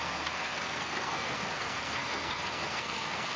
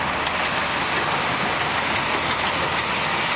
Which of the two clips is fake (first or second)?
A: first